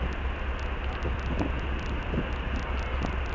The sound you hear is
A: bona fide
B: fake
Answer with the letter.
A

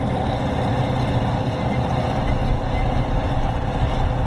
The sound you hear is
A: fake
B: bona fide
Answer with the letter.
B